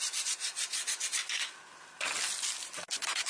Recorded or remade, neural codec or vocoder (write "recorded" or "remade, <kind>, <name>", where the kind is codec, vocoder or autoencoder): recorded